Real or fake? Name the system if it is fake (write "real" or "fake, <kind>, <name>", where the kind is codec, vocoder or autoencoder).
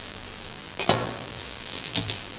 fake, vocoder, BigVGAN v2